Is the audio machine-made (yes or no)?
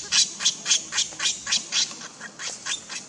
no